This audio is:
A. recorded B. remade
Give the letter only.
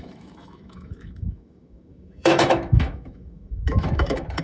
B